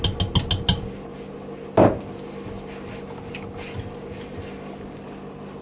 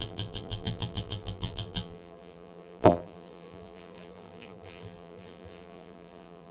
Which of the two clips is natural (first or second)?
first